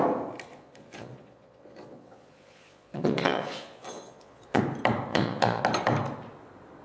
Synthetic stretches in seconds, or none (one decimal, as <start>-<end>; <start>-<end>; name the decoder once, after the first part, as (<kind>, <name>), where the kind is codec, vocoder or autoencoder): 0.5-4.6 (vocoder, Vocos); 5.1-5.6